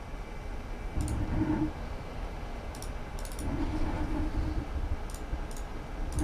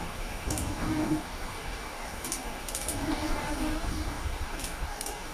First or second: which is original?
first